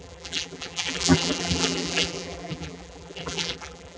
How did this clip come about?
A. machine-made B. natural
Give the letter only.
A